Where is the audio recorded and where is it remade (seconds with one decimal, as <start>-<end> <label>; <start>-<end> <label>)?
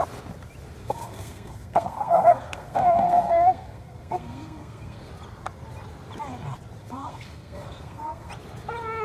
0.0-0.8 recorded; 0.8-5.1 remade; 5.1-6.8 recorded; 6.8-8.3 remade; 8.3-9.0 recorded